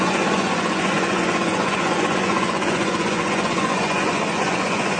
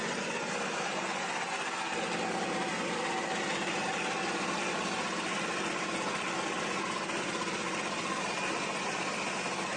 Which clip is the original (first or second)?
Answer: second